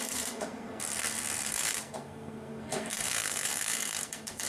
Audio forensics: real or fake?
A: fake